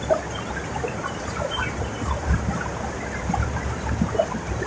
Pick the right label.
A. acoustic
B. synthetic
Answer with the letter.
B